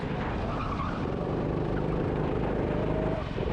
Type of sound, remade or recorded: recorded